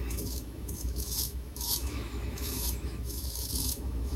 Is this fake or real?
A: fake